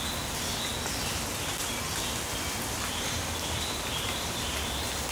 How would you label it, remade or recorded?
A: recorded